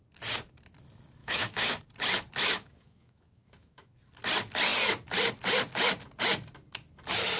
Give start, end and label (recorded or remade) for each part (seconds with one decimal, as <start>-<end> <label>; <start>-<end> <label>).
0.0-1.2 recorded; 1.2-1.8 remade; 1.8-2.5 recorded; 2.5-3.9 remade; 3.9-7.4 recorded